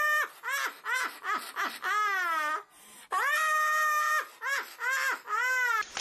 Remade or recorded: recorded